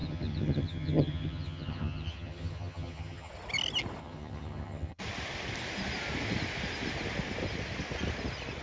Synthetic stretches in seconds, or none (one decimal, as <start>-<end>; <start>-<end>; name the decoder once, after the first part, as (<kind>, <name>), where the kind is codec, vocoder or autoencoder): 0.0-3.3 (vocoder, HiFi-GAN); 4.0-5.0